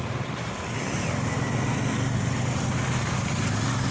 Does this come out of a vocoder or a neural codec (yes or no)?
no